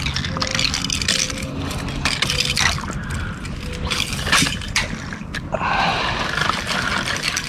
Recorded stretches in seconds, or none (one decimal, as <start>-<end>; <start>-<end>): 0.0-7.5